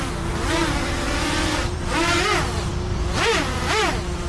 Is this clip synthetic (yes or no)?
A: yes